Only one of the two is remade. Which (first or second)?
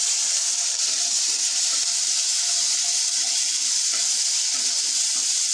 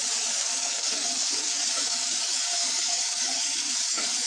second